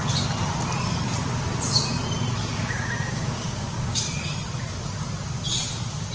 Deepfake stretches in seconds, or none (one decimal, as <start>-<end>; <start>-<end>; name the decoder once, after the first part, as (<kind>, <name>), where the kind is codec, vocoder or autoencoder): 2.5-4.0 (codec, DAC)